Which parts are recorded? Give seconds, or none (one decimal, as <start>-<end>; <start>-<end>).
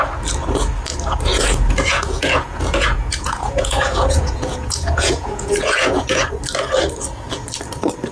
0.0-1.3; 6.2-8.1